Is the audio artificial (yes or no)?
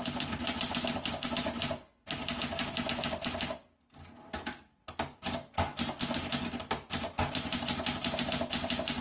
no